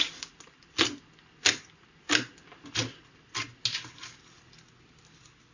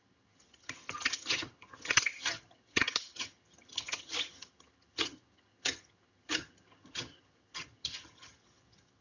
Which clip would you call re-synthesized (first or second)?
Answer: second